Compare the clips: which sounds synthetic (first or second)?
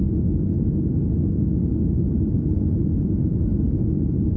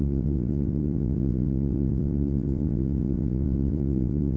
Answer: second